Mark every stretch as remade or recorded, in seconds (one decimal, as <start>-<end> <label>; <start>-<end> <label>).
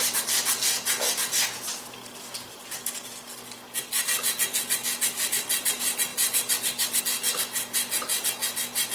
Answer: 0.0-8.9 recorded